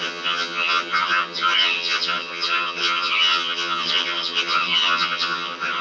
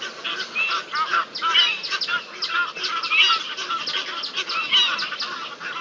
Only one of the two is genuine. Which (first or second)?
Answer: second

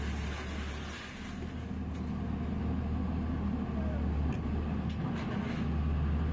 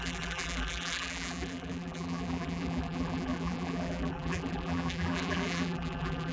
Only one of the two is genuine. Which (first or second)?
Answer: first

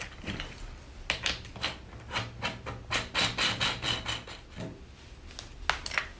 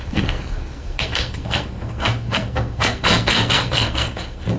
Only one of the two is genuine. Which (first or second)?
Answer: first